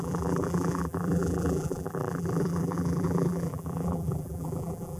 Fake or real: fake